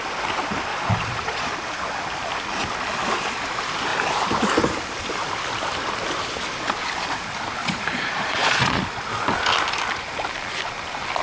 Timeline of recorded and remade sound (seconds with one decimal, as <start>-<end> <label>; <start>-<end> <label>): 0.0-0.7 recorded; 0.7-1.5 remade; 1.5-7.6 recorded; 7.6-8.8 remade; 8.8-11.2 recorded

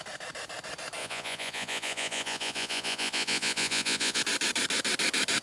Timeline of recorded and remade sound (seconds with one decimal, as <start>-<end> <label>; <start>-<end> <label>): 0.0-1.0 recorded; 1.0-4.2 remade; 4.2-5.4 recorded

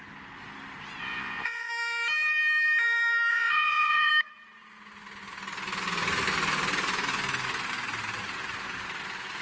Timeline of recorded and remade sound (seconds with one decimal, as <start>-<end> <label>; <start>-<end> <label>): 0.0-1.0 recorded; 1.0-1.7 remade; 1.7-3.3 recorded; 3.3-4.1 remade; 4.1-9.4 recorded

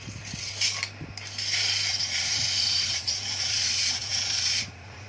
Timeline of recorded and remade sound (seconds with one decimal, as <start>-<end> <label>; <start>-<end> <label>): 0.0-1.9 recorded; 1.9-5.1 remade

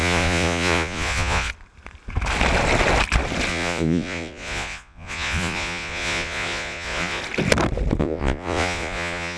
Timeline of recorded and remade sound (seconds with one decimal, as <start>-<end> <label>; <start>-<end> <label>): 0.0-1.5 remade; 1.5-3.5 recorded; 3.5-7.2 remade; 7.2-8.0 recorded; 8.0-9.4 remade

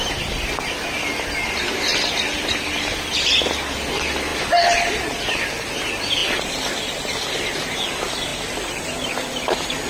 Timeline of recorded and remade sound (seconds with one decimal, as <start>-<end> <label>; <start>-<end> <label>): 0.0-9.9 recorded

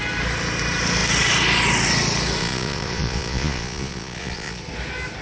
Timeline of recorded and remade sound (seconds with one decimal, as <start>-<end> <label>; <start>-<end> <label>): 0.0-2.4 recorded; 2.4-4.6 remade; 4.6-5.2 recorded

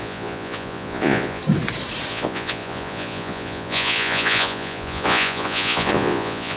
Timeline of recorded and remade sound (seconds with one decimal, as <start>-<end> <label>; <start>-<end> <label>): 0.0-1.4 remade; 1.4-2.1 recorded; 2.1-6.6 remade